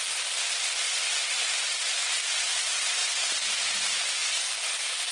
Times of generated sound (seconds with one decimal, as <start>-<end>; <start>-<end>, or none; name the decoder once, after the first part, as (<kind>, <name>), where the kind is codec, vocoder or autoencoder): none